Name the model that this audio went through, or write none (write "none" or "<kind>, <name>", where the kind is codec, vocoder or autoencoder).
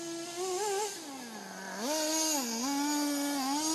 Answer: none